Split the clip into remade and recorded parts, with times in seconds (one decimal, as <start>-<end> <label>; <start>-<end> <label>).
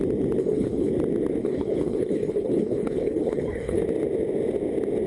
0.0-0.4 recorded; 0.4-0.9 remade; 0.9-1.4 recorded; 1.4-3.8 remade; 3.8-5.1 recorded